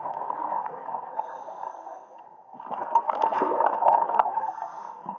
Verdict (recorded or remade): remade